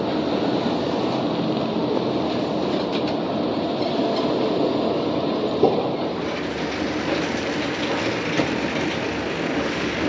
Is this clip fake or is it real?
real